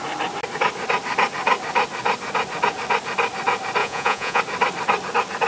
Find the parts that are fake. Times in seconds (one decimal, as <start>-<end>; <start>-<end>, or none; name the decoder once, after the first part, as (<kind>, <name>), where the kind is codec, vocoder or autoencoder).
3.8-4.4 (vocoder, Vocos)